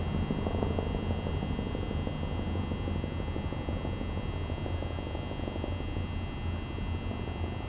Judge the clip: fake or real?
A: real